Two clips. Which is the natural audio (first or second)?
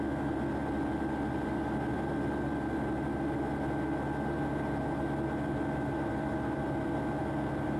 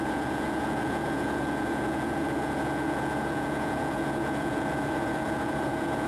first